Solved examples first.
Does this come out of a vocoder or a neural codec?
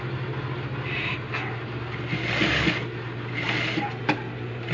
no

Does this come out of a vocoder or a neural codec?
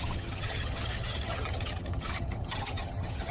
yes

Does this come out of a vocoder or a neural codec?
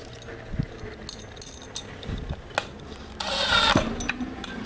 no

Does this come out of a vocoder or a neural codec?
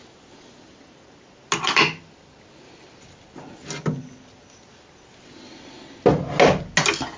no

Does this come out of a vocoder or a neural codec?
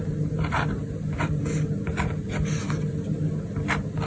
no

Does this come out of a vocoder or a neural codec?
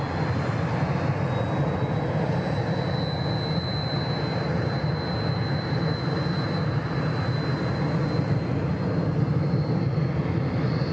no